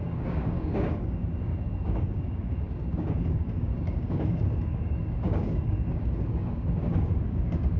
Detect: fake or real fake